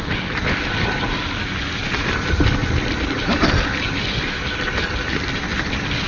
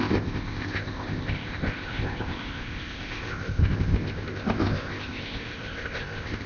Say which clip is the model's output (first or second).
second